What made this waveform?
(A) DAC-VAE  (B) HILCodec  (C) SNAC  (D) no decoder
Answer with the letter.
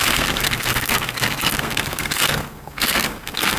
C